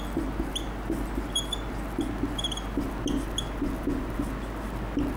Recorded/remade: recorded